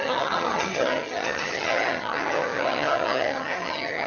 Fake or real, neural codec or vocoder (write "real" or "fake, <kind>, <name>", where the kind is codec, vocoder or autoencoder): fake, vocoder, HiFi-GAN